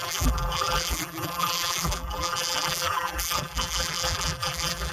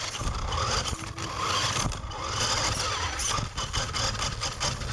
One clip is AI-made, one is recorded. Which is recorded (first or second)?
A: second